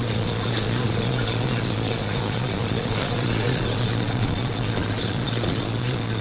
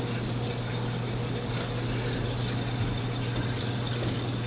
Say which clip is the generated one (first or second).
first